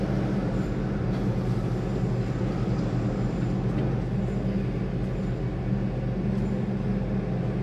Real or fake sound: real